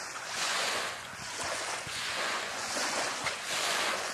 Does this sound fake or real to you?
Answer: fake